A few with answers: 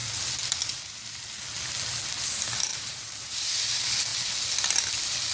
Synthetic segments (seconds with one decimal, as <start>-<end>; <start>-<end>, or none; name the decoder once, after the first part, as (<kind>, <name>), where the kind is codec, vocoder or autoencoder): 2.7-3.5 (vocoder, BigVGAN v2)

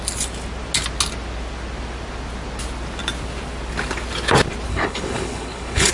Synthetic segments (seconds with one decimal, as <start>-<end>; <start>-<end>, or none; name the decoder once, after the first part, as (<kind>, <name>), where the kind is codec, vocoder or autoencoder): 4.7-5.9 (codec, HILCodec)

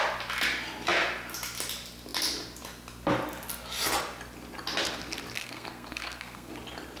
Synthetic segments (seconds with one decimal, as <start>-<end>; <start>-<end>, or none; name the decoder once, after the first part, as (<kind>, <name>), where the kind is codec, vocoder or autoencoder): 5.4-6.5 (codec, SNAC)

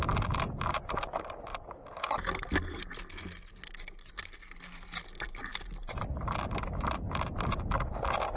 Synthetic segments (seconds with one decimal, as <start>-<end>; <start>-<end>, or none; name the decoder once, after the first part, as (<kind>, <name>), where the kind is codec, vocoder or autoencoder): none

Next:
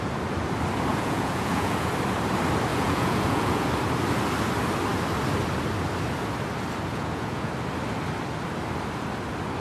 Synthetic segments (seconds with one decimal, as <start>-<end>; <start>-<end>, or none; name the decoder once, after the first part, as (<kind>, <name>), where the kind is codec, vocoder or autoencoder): 0.9-1.9 (vocoder, Vocos); 2.7-3.7; 6.9-7.5

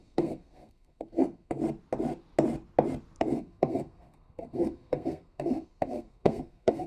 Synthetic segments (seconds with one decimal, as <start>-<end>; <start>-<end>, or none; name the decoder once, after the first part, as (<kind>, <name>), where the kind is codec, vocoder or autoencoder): 0.0-1.6 (codec, SNAC); 3.2-6.9

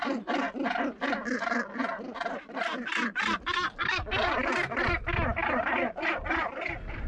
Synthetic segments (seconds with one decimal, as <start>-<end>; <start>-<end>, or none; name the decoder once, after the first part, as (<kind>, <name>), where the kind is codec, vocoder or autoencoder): none

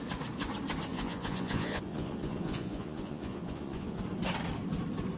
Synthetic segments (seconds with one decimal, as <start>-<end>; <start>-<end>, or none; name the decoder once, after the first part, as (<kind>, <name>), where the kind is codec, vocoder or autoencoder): 0.9-4.0 (vocoder, Vocos)